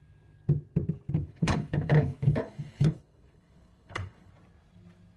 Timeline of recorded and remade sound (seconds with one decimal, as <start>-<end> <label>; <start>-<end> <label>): 0.0-1.2 recorded; 1.2-4.3 remade; 4.3-5.2 recorded